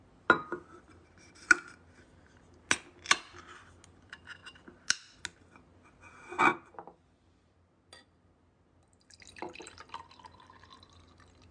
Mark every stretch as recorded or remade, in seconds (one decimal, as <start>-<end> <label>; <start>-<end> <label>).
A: 0.0-11.5 recorded